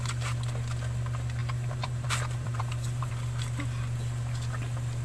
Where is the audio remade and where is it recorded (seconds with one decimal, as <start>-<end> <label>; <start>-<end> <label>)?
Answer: 0.0-1.4 recorded; 1.4-3.1 remade; 3.1-5.0 recorded